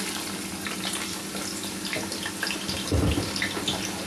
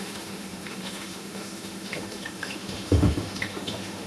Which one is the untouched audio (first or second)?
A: first